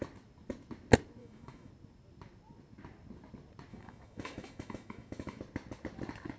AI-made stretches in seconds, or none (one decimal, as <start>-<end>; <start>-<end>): 1.2-1.7; 3.7-5.4